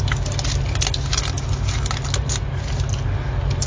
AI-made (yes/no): no